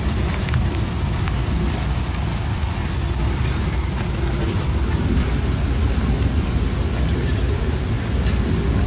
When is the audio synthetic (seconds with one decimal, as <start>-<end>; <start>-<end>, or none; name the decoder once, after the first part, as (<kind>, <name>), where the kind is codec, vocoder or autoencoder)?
none